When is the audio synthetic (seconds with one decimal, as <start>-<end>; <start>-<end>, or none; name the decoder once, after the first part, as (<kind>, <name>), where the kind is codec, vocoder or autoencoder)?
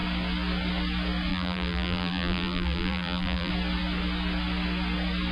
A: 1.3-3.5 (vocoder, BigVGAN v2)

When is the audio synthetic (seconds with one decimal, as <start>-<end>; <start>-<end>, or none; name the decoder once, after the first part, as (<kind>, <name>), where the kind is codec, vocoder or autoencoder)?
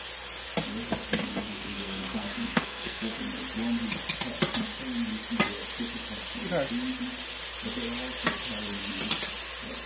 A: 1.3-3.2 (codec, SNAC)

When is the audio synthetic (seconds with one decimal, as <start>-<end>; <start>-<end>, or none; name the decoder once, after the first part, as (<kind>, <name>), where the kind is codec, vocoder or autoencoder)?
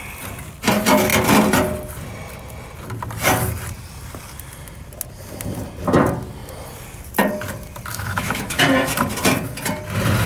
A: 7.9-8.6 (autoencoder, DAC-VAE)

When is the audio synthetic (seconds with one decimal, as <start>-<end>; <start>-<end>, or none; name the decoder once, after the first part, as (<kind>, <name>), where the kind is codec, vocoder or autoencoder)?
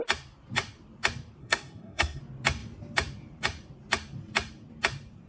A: 1.4-2.2 (codec, SNAC)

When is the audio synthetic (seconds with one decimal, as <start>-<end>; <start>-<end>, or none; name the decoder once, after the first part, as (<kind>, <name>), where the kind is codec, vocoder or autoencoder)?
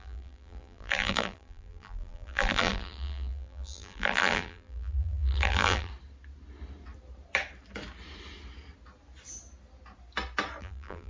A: 0.0-5.9 (vocoder, BigVGAN v2); 10.6-11.1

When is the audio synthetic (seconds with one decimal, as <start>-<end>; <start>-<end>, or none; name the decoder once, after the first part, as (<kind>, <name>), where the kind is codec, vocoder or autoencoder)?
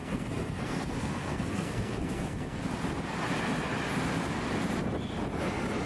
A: 0.0-2.6 (codec, SNAC)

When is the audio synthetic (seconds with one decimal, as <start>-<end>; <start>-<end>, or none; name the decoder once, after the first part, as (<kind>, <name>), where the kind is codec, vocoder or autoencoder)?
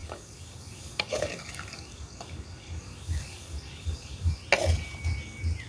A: 0.0-4.4 (codec, DAC)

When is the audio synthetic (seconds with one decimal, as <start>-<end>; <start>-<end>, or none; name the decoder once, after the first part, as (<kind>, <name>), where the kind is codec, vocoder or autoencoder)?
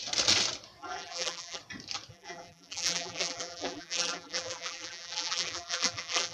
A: 0.8-1.6 (vocoder, BigVGAN v2); 2.1-6.3